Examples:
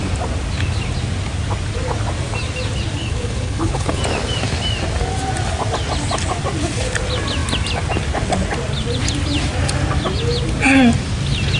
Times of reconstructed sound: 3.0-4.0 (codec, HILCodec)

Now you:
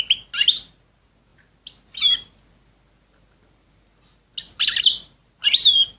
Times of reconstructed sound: none

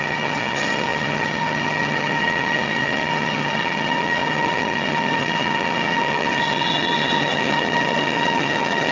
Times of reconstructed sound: 0.0-8.9 (vocoder, HiFi-GAN)

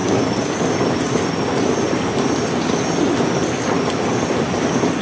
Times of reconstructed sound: none

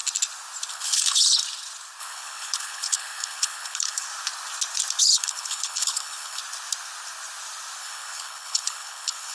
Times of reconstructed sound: 0.7-1.4 (codec, HILCodec); 2.0-4.1; 5.0-6.4; 7.8-9.3

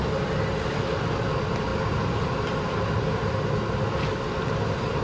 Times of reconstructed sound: none